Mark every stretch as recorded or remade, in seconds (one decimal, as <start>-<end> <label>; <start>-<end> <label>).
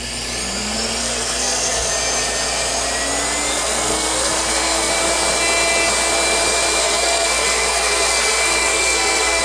0.0-1.0 recorded; 1.0-1.9 remade; 1.9-3.5 recorded; 3.5-4.9 remade; 4.9-6.8 recorded; 6.8-9.4 remade